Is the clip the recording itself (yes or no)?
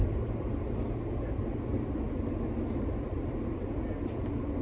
yes